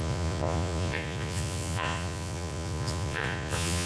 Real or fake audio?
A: fake